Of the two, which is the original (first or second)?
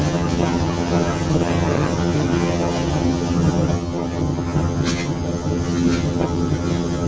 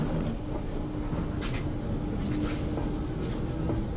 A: second